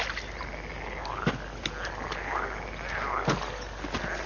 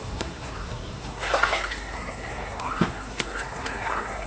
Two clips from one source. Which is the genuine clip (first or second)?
first